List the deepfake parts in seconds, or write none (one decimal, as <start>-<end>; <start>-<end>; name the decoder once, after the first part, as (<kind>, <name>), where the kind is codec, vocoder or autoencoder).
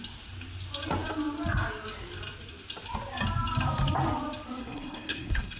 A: 4.6-5.6 (codec, SNAC)